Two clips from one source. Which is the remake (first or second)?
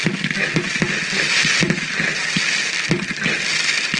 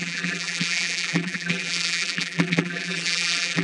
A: second